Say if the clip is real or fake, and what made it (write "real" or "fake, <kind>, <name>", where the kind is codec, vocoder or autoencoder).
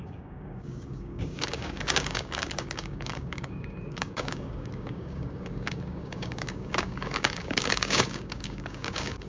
fake, codec, DAC